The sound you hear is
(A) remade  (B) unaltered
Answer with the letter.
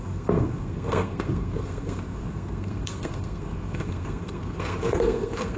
A